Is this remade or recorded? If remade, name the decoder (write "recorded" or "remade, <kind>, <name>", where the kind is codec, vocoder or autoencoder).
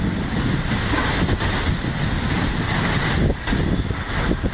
recorded